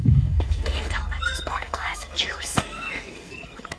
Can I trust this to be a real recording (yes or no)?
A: no